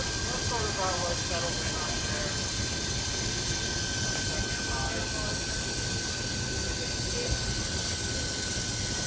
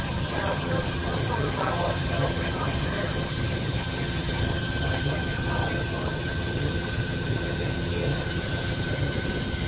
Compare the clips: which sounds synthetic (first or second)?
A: second